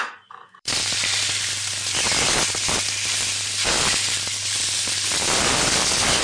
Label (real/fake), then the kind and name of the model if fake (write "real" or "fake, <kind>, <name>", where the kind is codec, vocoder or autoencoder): fake, vocoder, BigVGAN v2